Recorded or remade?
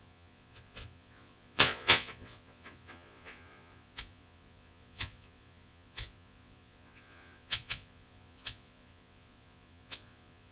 remade